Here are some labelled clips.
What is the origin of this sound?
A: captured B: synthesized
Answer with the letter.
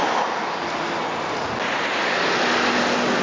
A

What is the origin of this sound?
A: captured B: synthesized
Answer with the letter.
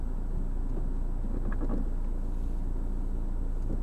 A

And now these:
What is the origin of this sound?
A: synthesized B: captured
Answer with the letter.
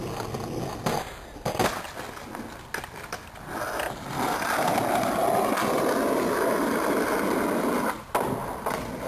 B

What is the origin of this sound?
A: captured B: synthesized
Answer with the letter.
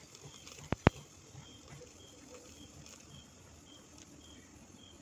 A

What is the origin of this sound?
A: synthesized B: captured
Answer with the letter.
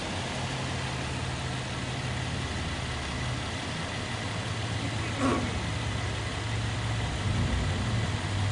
B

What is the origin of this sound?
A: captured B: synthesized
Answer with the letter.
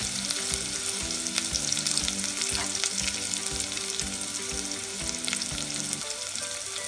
A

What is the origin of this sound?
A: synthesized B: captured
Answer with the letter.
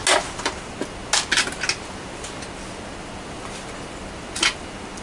B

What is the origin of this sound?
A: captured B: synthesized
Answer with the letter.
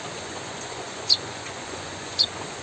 B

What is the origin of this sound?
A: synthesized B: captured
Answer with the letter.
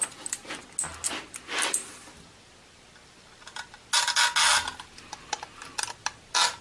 B